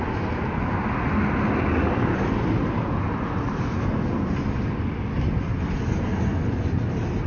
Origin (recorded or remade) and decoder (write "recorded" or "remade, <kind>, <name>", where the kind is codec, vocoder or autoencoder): recorded